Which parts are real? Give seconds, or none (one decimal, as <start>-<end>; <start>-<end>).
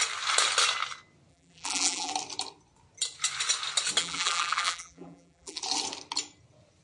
0.0-1.3; 2.1-4.0; 5.6-6.8